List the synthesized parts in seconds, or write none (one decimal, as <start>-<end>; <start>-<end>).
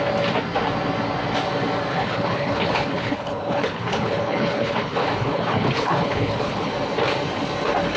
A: 1.9-6.7